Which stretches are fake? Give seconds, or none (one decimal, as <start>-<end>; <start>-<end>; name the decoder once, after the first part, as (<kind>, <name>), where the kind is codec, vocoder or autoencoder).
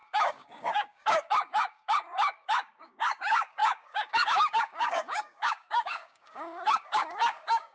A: 0.0-7.7 (codec, DAC)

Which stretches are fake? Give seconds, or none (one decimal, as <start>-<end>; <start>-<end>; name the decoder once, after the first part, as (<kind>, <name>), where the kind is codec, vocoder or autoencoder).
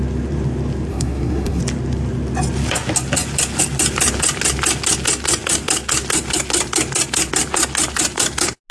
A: 0.9-1.6 (codec, SNAC)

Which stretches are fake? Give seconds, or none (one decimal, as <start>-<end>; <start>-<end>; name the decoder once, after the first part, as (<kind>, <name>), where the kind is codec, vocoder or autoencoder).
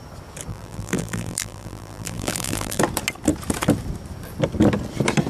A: 0.5-2.8 (vocoder, BigVGAN v2)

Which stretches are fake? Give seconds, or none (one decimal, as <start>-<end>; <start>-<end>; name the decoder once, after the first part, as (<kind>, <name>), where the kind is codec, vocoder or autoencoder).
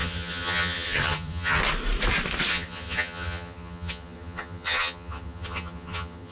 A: 0.0-1.6 (vocoder, HiFi-GAN); 2.5-6.3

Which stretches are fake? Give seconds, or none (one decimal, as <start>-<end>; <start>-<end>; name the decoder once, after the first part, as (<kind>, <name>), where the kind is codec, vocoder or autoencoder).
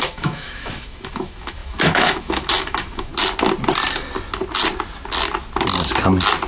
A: 0.0-3.1 (autoencoder, DAC-VAE)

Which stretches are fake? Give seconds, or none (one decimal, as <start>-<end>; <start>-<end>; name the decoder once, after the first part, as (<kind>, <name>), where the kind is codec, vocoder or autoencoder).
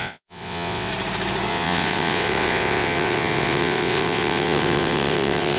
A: 0.0-0.9 (vocoder, WaveNeXt); 1.5-5.6